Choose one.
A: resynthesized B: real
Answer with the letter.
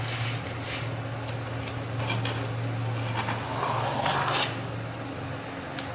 B